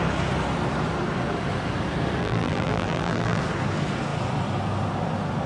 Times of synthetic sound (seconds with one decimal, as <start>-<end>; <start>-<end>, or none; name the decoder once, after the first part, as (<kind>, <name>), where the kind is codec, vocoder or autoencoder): 2.2-3.4 (vocoder, BigVGAN v2)